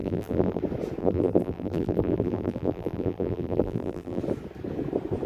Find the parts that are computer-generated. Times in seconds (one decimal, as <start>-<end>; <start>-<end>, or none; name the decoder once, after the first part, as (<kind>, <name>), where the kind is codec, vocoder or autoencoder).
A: 0.0-0.6 (vocoder, BigVGAN v2); 1.0-4.2